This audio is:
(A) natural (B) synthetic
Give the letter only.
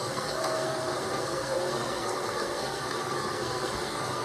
B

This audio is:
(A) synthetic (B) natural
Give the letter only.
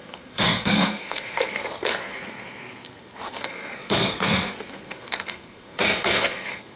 A